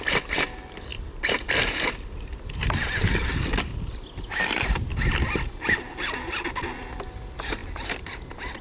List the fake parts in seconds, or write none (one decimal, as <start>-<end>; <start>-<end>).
0.9-3.3; 7.6-8.2